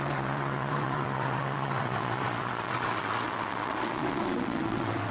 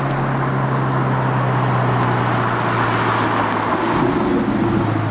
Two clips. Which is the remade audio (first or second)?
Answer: first